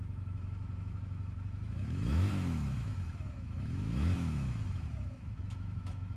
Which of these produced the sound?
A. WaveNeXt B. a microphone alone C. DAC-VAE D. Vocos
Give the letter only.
C